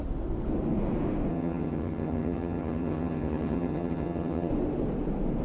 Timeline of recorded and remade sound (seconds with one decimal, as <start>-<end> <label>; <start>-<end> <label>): 0.0-1.3 recorded; 1.3-4.5 remade; 4.5-5.4 recorded